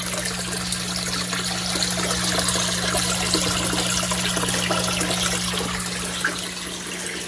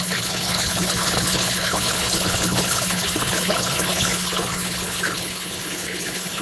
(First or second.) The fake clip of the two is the second